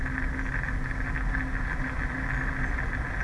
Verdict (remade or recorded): recorded